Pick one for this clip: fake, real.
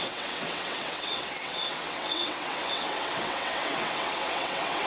fake